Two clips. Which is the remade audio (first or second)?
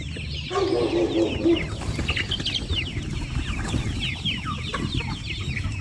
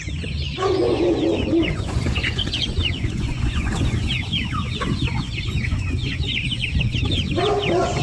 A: second